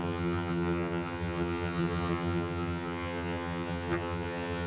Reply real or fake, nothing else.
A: fake